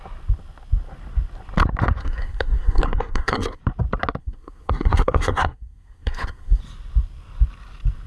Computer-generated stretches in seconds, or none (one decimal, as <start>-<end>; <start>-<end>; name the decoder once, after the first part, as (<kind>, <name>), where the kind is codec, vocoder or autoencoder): 2.0-3.6 (codec, SNAC); 4.2-6.6